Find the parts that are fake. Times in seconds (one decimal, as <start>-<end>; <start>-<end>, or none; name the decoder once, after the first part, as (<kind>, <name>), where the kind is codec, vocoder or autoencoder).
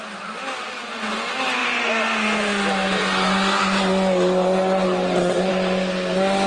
none